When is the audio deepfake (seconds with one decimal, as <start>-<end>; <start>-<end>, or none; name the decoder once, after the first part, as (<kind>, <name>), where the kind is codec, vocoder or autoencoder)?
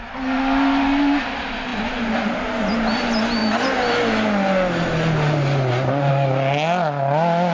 none